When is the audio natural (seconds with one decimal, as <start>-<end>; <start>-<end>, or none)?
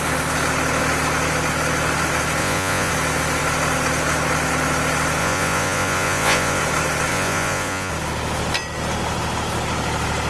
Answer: 0.0-2.4; 2.9-5.2; 6.6-7.1; 7.9-10.3